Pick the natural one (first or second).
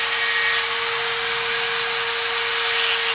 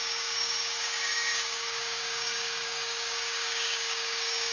first